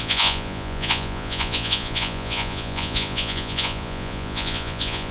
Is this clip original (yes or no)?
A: no